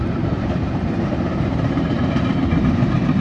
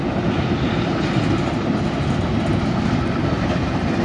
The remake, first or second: first